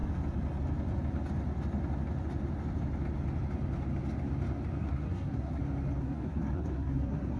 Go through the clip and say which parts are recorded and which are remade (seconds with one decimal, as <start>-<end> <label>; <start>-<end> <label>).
0.0-4.8 recorded; 4.8-5.6 remade; 5.6-6.0 recorded; 6.0-7.4 remade